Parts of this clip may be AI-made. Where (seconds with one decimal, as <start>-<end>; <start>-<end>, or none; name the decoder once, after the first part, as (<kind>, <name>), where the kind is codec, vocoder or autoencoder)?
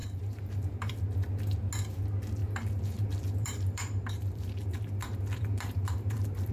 0.0-1.0 (vocoder, BigVGAN v2); 2.4-6.5